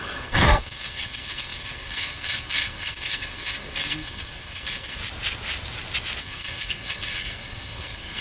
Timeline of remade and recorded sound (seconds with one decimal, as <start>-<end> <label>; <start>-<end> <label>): 0.0-5.0 remade; 5.0-6.2 recorded; 6.2-8.2 remade